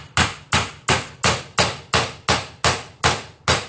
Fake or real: real